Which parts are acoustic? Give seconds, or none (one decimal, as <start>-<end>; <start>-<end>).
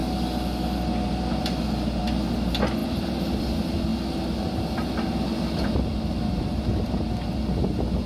0.0-8.1